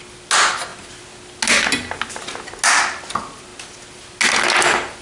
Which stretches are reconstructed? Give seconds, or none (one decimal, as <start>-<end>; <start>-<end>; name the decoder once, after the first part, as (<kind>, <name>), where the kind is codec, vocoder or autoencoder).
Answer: none